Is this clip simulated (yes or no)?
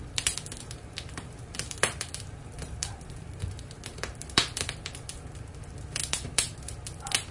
yes